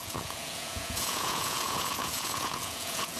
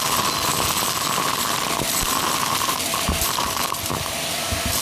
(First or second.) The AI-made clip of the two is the first